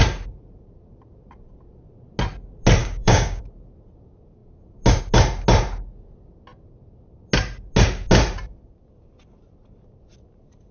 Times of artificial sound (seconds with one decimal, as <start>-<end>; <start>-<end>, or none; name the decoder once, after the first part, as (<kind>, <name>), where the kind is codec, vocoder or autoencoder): 2.8-3.4 (codec, DAC)